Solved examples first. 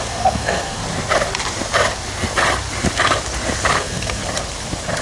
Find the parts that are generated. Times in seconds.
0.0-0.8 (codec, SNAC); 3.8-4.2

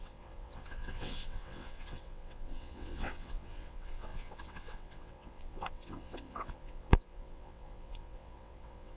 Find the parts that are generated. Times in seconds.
0.0-9.0 (vocoder, WaveNeXt)

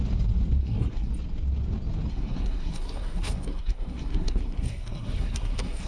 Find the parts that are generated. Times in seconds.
0.6-1.1 (codec, SNAC); 2.1-5.9

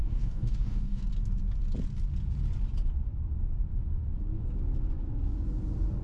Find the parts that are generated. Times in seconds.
0.0-1.0 (codec, DAC)

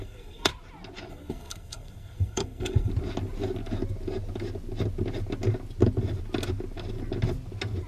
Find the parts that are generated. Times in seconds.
0.0-0.5 (codec, SNAC); 1.1-2.9

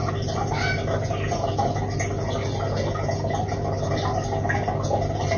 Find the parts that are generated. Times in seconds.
none

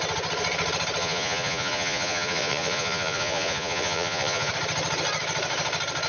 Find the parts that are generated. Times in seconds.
1.0-4.5 (vocoder, Vocos)